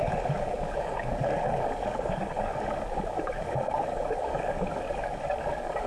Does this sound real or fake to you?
fake